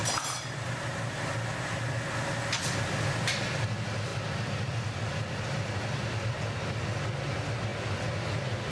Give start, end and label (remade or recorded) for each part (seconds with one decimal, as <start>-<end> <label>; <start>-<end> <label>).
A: 0.0-1.3 remade; 1.3-8.7 recorded